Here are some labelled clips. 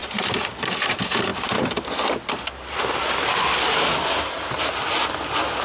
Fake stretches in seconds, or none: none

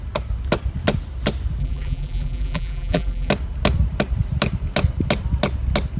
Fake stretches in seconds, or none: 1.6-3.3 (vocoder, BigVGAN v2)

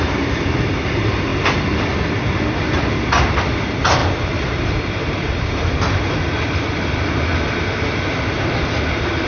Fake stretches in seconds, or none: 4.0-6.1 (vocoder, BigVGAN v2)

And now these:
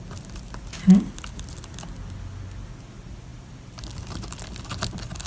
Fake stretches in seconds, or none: 3.3-4.1 (vocoder, BigVGAN v2)